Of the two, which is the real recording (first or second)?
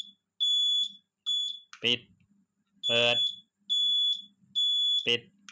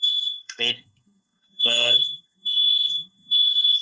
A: first